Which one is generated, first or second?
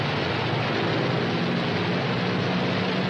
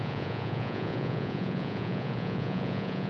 second